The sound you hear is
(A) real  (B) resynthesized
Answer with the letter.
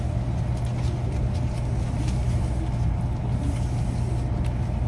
A